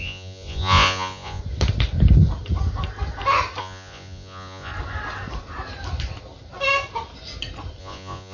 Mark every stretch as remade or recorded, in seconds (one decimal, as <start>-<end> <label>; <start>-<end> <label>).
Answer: 0.0-1.4 remade; 1.4-3.6 recorded; 3.6-4.7 remade; 4.7-7.8 recorded; 7.8-8.3 remade

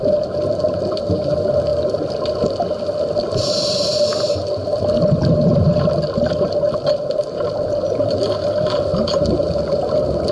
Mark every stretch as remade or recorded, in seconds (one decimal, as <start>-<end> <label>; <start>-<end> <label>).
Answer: 0.0-10.3 recorded